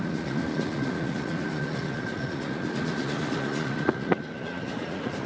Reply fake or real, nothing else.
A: fake